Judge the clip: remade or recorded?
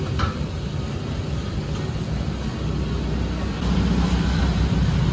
recorded